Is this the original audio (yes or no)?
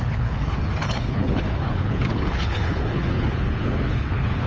no